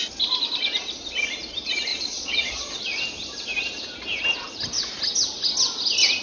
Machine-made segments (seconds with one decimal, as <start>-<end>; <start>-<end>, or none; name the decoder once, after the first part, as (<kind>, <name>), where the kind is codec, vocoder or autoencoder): 1.9-2.8 (vocoder, Vocos)